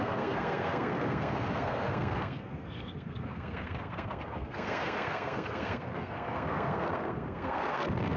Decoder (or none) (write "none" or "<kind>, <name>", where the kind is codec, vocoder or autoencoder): codec, SNAC